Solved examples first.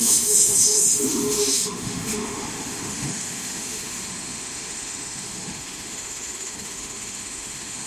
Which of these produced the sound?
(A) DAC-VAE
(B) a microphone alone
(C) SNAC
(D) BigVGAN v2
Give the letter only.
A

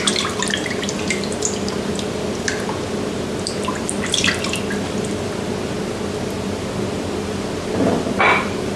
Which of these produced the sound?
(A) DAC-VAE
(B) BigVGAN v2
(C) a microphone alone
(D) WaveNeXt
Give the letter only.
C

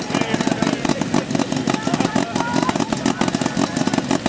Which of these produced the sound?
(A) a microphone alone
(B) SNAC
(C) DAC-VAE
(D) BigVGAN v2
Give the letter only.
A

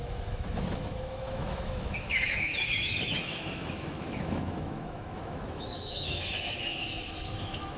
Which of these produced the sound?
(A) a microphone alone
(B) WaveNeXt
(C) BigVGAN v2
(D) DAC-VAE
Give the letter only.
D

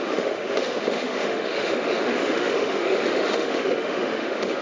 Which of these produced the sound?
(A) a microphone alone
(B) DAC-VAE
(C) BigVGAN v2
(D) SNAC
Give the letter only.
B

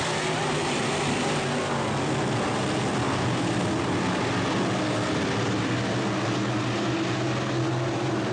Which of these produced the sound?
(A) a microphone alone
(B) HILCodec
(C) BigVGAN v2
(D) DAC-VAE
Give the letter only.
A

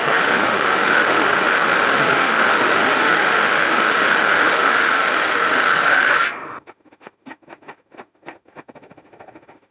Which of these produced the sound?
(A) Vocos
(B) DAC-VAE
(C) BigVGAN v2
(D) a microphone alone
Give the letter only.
B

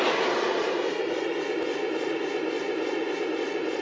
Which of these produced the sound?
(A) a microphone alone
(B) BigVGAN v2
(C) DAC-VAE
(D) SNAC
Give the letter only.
A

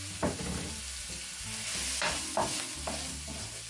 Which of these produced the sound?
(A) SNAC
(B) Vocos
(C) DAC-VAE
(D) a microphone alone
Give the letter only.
D